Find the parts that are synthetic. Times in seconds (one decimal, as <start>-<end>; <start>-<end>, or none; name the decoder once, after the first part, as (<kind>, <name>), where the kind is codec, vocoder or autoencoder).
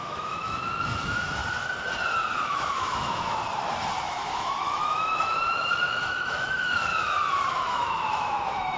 0.0-1.4 (autoencoder, DAC-VAE); 2.3-3.4; 4.0-6.9; 7.5-8.8